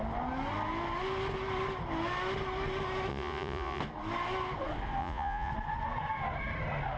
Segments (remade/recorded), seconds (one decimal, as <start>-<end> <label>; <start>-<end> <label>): 0.0-3.1 recorded; 3.1-3.8 remade; 3.8-5.0 recorded; 5.0-5.5 remade; 5.5-7.0 recorded